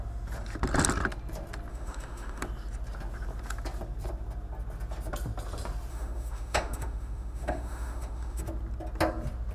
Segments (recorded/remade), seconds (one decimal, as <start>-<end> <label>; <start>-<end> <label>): 0.0-1.7 recorded; 1.7-2.4 remade; 2.4-5.9 recorded; 5.9-8.4 remade; 8.4-9.5 recorded